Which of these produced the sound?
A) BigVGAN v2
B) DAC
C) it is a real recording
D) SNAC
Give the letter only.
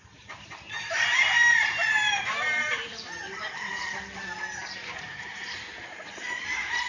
A